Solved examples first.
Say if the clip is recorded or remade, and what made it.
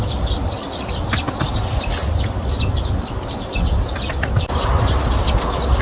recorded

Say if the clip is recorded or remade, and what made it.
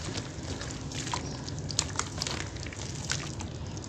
recorded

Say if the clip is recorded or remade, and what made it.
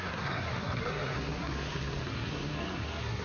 remade, codec, SNAC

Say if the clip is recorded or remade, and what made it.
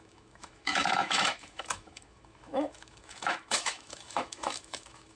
remade, autoencoder, DAC-VAE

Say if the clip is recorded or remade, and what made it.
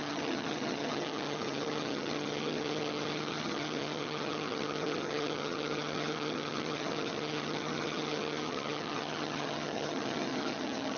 remade, vocoder, HiFi-GAN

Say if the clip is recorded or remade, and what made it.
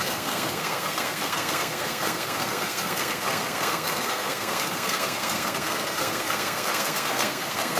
remade, codec, SNAC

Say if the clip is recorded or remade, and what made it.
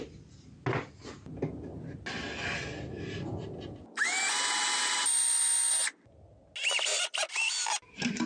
recorded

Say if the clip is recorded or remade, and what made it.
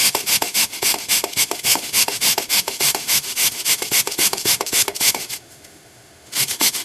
remade, autoencoder, DAC-VAE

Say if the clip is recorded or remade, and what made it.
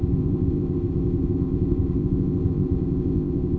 remade, codec, ZipCodec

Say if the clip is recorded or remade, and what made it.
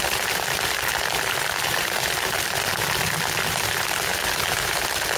recorded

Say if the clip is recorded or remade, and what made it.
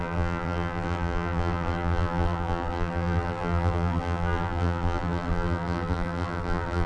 remade, vocoder, BigVGAN v2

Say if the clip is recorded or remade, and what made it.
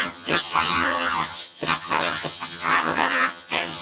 remade, vocoder, HiFi-GAN